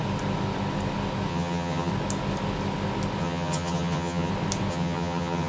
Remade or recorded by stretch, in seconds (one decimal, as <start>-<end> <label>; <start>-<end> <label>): 0.0-1.3 recorded; 1.3-1.9 remade; 1.9-3.2 recorded; 3.2-4.3 remade; 4.3-4.7 recorded; 4.7-5.5 remade